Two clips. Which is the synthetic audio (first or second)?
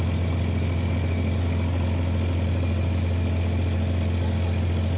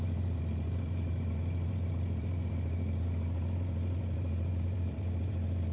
second